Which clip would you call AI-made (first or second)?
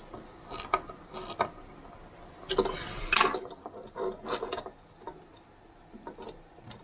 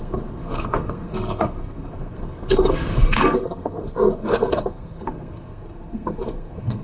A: second